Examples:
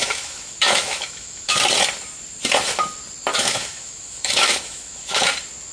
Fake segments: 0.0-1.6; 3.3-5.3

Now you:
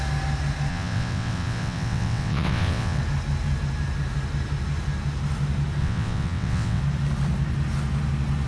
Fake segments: 0.7-3.0; 5.8-6.8

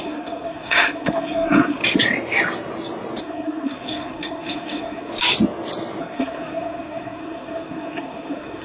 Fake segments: 0.0-1.8; 3.2-5.1; 6.0-8.6